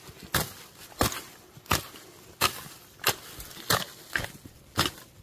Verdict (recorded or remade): recorded